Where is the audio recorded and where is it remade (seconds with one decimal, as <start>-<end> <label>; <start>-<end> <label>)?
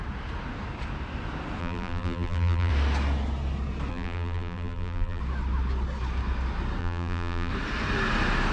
0.0-1.6 recorded; 1.6-2.7 remade; 2.7-3.9 recorded; 3.9-5.2 remade; 5.2-6.8 recorded; 6.8-7.5 remade; 7.5-8.5 recorded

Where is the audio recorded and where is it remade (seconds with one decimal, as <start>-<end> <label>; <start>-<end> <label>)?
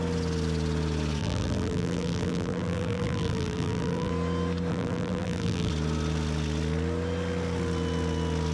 0.0-1.2 recorded; 1.2-4.1 remade; 4.1-4.7 recorded; 4.7-5.7 remade; 5.7-8.5 recorded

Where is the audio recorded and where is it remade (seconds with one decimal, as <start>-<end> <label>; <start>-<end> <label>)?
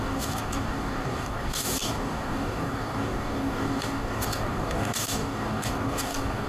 0.0-6.5 remade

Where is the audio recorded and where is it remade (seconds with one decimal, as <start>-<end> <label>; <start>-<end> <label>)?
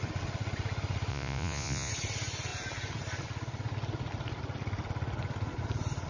0.0-1.1 recorded; 1.1-1.9 remade; 1.9-6.1 recorded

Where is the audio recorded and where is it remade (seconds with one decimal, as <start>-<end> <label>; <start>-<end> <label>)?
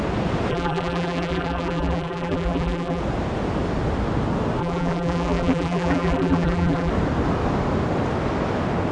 0.0-0.5 recorded; 0.5-3.0 remade; 3.0-4.6 recorded; 4.6-6.9 remade; 6.9-8.9 recorded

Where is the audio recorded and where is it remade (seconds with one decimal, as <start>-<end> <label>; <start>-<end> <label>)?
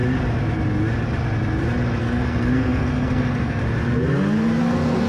0.0-2.0 recorded; 2.0-3.6 remade; 3.6-4.6 recorded; 4.6-5.1 remade